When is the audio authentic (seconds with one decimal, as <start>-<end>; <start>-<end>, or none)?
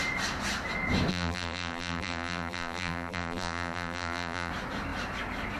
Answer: 0.0-1.1; 4.5-5.6